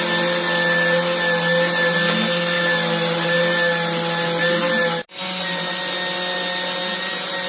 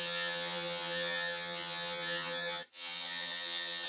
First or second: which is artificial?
second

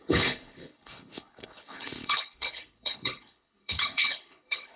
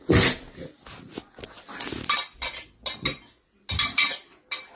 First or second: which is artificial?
first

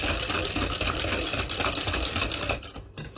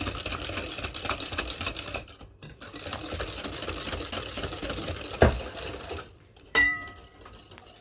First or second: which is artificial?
second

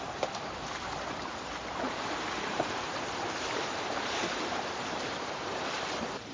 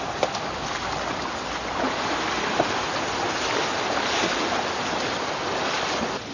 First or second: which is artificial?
first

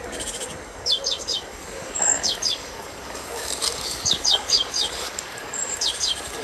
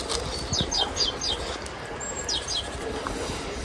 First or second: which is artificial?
first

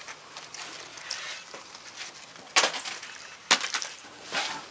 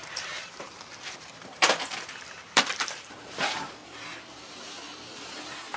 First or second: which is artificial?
second